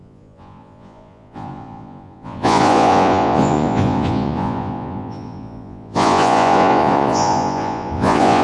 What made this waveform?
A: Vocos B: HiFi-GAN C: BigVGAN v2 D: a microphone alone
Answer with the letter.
A